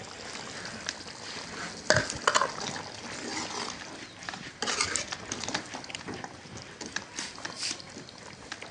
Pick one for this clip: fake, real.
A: real